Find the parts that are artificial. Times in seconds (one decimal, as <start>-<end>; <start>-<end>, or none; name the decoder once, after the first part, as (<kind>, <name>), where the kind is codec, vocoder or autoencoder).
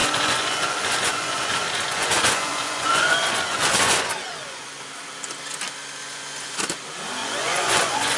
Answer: 0.0-4.9 (vocoder, Vocos); 6.0-6.6; 7.2-8.2